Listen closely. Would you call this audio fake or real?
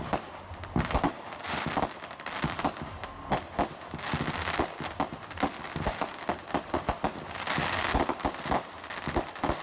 real